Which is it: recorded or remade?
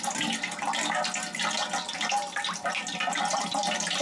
recorded